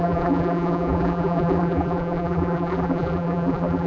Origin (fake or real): fake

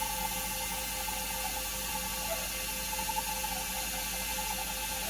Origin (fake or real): real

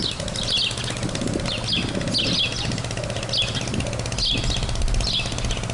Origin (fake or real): real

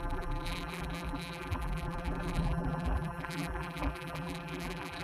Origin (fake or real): fake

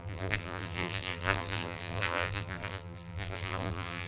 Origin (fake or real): fake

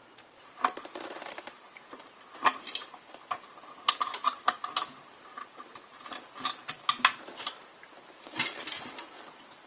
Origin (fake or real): fake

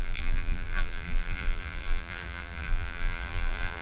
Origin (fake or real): fake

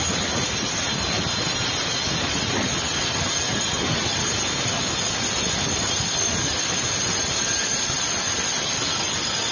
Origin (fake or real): real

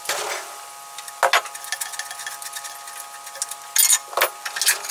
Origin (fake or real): real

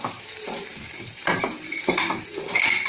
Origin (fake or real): fake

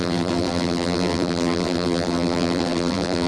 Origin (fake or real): fake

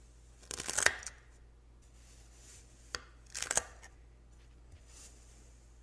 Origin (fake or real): real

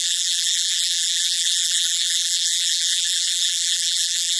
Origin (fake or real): fake